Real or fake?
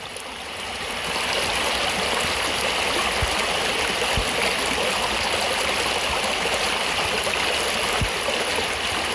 real